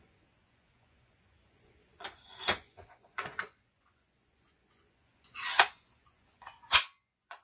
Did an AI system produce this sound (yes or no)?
yes